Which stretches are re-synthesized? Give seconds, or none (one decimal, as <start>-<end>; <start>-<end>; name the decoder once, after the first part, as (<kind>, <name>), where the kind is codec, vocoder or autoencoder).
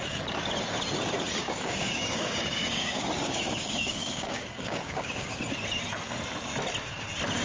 1.4-5.4 (codec, DAC)